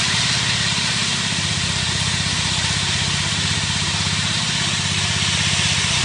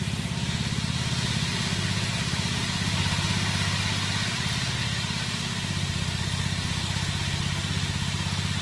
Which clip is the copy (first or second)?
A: first